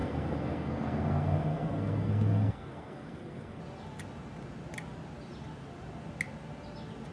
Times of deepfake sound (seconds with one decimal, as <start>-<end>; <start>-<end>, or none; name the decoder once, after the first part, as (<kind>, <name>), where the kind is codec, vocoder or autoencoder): 0.0-3.6 (codec, SNAC)